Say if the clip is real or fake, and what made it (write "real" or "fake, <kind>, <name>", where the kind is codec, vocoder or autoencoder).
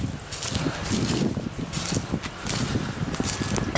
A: real